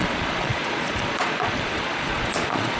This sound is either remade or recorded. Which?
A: remade